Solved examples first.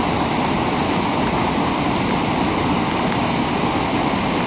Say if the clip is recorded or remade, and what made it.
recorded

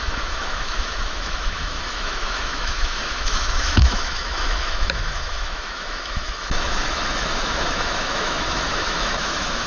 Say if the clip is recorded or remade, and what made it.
remade, autoencoder, DAC-VAE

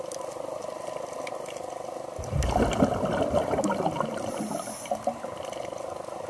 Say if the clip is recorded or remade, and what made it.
recorded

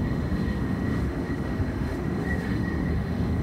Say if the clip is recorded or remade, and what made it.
remade, autoencoder, DAC-VAE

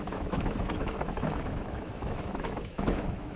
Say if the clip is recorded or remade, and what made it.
remade, autoencoder, DAC-VAE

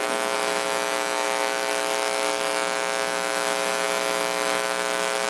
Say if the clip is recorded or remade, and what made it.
remade, autoencoder, DAC-VAE